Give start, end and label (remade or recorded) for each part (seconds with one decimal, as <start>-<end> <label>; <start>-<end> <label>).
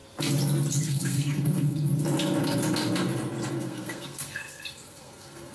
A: 0.0-0.8 recorded; 0.8-1.9 remade; 1.9-3.5 recorded; 3.5-5.5 remade